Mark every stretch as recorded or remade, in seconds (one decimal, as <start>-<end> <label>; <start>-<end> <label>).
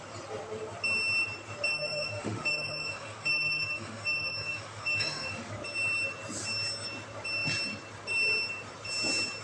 0.0-1.7 recorded; 1.7-5.5 remade; 5.5-9.4 recorded